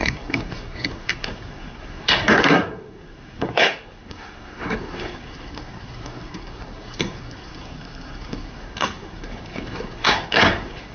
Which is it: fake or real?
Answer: fake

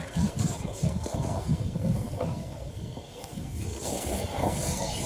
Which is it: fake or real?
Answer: fake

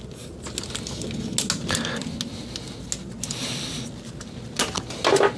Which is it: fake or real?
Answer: real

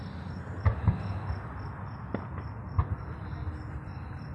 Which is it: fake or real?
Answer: real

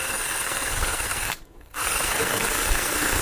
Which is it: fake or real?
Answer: fake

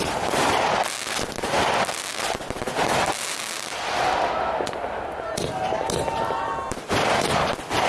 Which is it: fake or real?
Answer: real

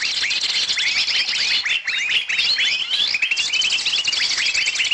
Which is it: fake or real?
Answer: real